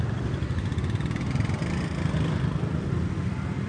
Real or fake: fake